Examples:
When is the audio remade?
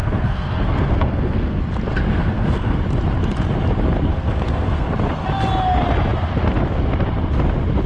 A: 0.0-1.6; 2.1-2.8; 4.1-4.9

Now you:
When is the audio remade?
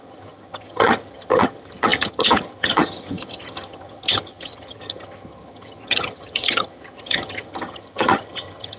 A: 0.0-8.8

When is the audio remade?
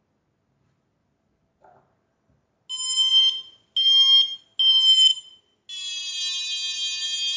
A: none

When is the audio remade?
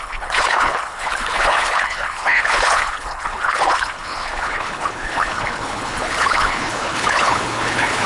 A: 0.0-8.1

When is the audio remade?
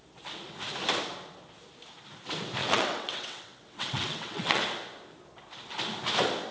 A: 2.6-4.6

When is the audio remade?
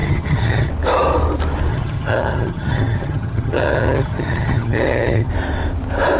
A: 0.0-0.7; 1.7-5.3